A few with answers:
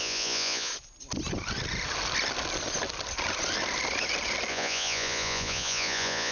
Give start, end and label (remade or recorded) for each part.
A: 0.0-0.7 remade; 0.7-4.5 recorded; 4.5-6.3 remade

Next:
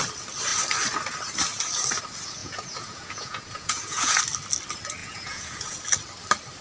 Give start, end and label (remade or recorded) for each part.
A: 0.0-2.4 recorded; 2.4-4.2 remade; 4.2-5.0 recorded; 5.0-5.8 remade; 5.8-6.6 recorded

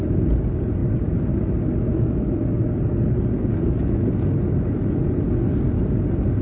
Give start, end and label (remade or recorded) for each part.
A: 0.0-6.4 recorded

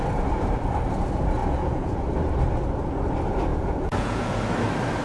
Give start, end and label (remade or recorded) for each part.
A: 0.0-1.4 recorded; 1.4-2.0 remade; 2.0-3.5 recorded; 3.5-4.4 remade; 4.4-5.0 recorded

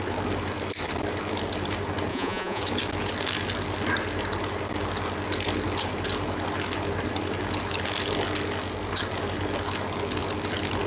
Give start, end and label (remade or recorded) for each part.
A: 0.0-2.1 recorded; 2.1-2.6 remade; 2.6-10.9 recorded